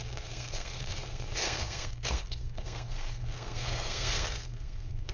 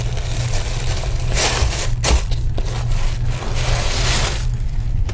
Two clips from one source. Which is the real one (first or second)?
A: second